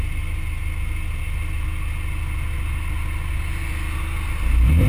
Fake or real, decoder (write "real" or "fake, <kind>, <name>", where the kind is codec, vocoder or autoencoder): real